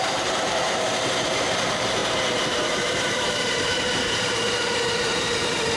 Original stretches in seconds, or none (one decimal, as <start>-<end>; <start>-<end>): none